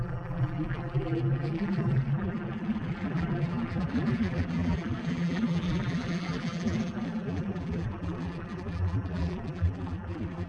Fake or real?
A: fake